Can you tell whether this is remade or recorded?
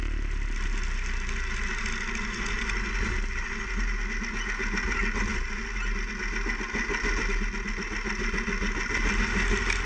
recorded